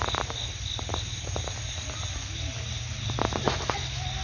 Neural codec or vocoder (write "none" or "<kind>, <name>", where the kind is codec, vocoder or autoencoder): none